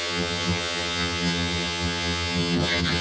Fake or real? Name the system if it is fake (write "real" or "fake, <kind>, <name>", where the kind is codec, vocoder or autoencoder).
fake, vocoder, HiFi-GAN